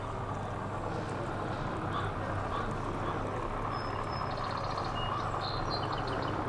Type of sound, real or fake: real